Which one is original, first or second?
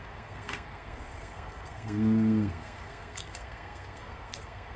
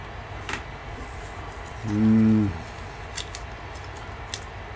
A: second